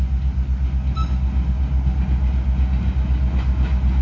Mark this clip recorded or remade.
recorded